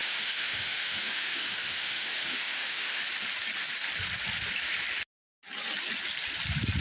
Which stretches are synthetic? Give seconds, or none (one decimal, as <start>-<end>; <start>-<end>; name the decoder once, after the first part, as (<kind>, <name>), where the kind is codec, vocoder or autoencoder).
0.0-3.0 (autoencoder, DAC-VAE)